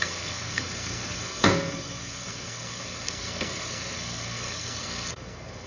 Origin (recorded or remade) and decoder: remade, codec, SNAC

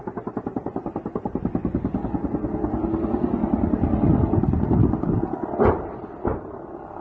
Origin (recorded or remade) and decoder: recorded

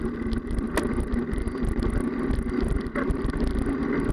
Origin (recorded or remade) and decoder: recorded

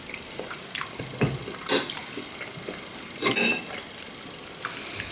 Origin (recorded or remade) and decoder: recorded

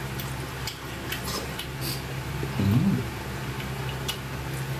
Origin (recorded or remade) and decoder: recorded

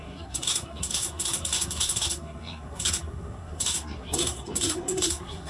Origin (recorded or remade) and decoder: remade, codec, SNAC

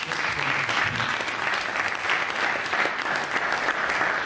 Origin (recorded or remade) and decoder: recorded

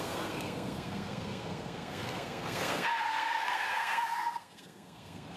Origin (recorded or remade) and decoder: remade, codec, SNAC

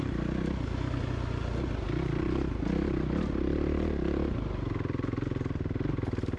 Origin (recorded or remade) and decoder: recorded